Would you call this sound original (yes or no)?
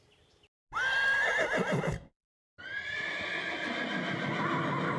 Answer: yes